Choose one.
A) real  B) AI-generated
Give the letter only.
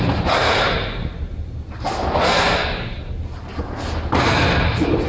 A